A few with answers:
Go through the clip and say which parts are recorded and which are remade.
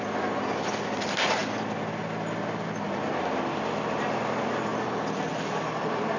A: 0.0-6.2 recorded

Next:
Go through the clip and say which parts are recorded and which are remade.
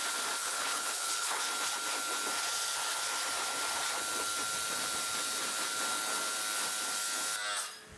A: 0.0-0.4 recorded; 0.4-1.4 remade; 1.4-8.0 recorded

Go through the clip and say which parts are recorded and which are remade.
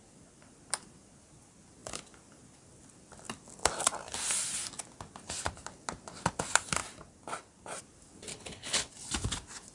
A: 0.0-8.3 recorded; 8.3-8.9 remade; 8.9-9.7 recorded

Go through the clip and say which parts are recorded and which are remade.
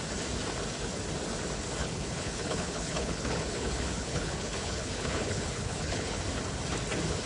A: 0.0-1.8 recorded; 1.8-6.2 remade; 6.2-7.3 recorded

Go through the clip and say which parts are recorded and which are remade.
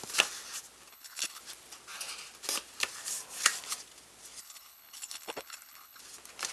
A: 0.0-0.9 recorded; 0.9-1.4 remade; 1.4-4.4 recorded; 4.4-6.0 remade; 6.0-6.5 recorded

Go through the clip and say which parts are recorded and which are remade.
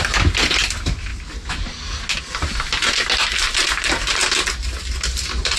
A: 0.0-5.6 recorded